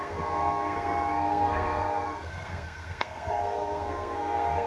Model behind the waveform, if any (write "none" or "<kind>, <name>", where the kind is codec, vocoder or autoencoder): codec, SNAC